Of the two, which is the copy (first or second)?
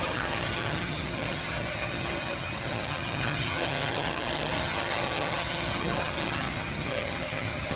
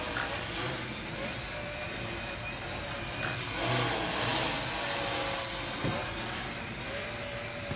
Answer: first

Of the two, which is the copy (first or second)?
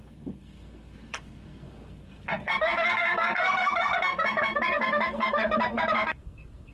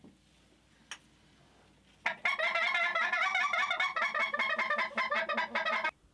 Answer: first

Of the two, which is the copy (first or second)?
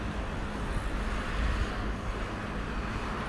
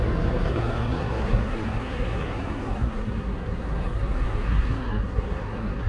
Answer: second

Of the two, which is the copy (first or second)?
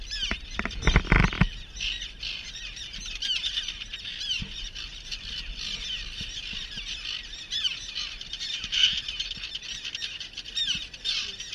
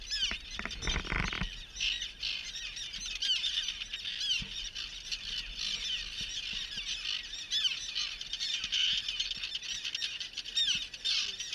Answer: first